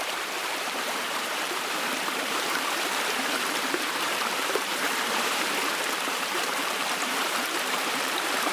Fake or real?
fake